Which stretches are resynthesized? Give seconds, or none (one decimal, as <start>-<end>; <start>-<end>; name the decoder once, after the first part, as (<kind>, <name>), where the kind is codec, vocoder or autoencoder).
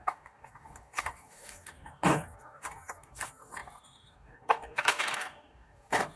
0.0-6.2 (codec, DAC)